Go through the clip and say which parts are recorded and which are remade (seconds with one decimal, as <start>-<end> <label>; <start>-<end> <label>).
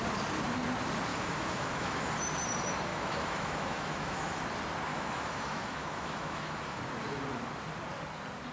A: 0.0-1.1 recorded; 1.1-2.1 remade; 2.1-2.9 recorded; 2.9-4.4 remade; 4.4-4.9 recorded; 4.9-6.8 remade; 6.8-8.5 recorded